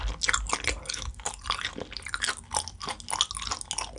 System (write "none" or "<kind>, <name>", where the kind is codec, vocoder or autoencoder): none